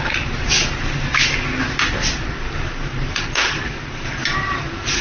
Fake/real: real